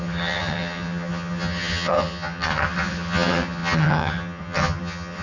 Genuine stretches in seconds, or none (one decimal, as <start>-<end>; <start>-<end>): none